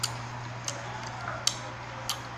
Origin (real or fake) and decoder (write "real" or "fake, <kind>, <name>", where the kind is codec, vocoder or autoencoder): real